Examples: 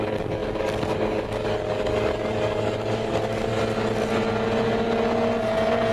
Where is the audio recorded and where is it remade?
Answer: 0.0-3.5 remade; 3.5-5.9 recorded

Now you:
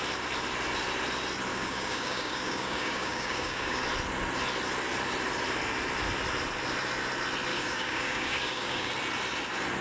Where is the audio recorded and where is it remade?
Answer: 0.0-1.5 recorded; 1.5-3.8 remade; 3.8-7.5 recorded; 7.5-8.9 remade; 8.9-9.8 recorded

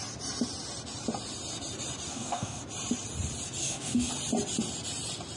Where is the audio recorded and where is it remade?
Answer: 0.0-2.1 recorded; 2.1-2.6 remade; 2.6-3.6 recorded; 3.6-4.1 remade; 4.1-5.4 recorded

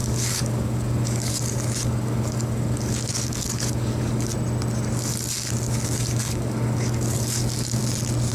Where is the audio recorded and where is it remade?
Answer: 0.0-4.3 remade; 4.3-5.7 recorded; 5.7-7.8 remade; 7.8-8.3 recorded

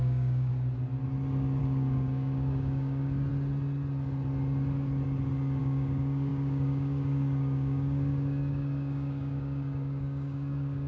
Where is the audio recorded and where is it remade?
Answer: 0.0-0.5 remade; 0.5-1.6 recorded; 1.6-3.3 remade; 3.3-5.6 recorded; 5.6-10.9 remade

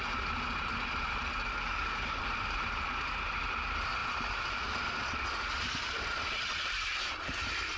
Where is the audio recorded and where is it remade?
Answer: 0.0-1.5 recorded; 1.5-2.2 remade; 2.2-7.8 recorded

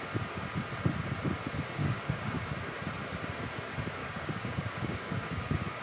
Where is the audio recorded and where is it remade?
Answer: 0.0-1.8 recorded; 1.8-2.4 remade; 2.4-4.0 recorded; 4.0-5.8 remade